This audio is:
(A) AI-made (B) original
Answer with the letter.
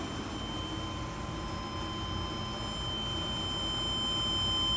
B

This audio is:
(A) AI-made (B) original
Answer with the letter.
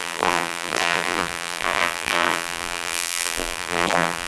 A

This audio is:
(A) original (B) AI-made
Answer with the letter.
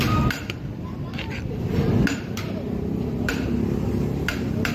B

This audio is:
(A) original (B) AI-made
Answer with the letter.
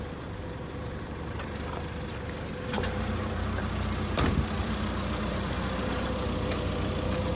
B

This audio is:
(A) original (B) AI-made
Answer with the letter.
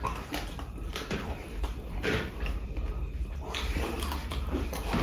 B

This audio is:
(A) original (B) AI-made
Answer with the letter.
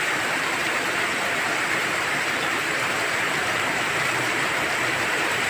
B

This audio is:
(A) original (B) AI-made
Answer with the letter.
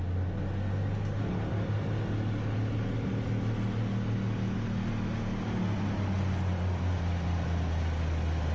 A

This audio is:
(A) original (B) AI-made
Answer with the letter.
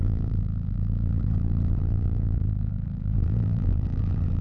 B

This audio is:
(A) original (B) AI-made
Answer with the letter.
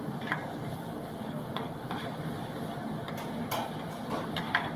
A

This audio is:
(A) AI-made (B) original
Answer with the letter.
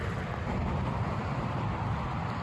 A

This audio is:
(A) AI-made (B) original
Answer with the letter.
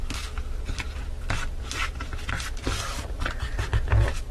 B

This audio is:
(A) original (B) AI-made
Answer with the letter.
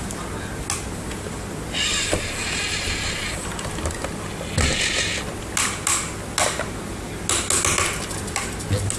A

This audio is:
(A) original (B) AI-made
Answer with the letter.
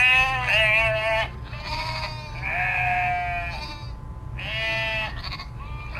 A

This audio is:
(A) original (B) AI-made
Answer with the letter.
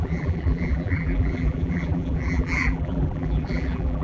B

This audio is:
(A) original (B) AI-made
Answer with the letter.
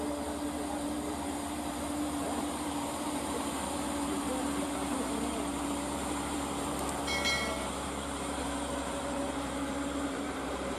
B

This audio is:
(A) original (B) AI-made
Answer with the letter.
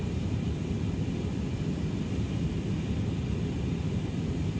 A